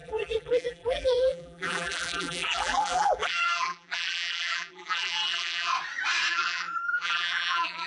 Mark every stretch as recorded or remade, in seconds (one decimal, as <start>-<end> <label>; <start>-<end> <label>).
0.0-5.7 remade; 5.7-6.3 recorded; 6.3-7.9 remade